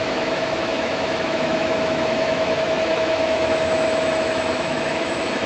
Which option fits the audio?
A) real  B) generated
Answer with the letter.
B